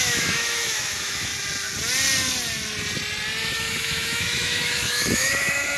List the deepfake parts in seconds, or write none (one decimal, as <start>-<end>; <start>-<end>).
0.0-1.3; 3.4-5.8